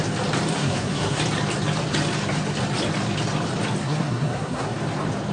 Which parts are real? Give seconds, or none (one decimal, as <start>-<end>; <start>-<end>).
0.0-0.5; 1.2-3.8; 4.8-5.3